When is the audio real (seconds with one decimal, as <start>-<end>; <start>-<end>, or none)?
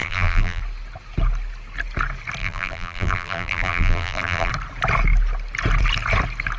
0.6-2.4; 4.5-6.6